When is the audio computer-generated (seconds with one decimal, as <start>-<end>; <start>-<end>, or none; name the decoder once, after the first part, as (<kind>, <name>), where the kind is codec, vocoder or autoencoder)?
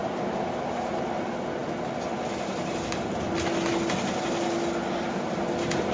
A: 0.0-1.1 (vocoder, BigVGAN v2)